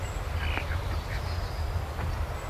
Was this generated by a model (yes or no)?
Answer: no